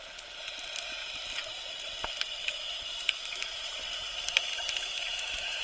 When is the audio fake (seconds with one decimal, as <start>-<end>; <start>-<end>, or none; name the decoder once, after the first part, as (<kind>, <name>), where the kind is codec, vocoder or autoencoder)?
2.4-3.8 (autoencoder, DAC-VAE); 4.5-5.6